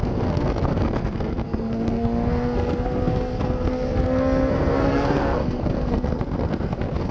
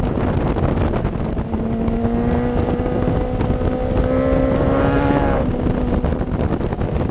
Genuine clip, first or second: second